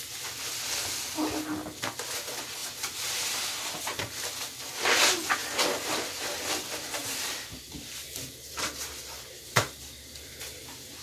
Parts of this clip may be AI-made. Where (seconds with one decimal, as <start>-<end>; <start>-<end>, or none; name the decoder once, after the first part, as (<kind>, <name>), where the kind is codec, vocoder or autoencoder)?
2.6-4.0 (vocoder, BigVGAN v2); 7.0-10.6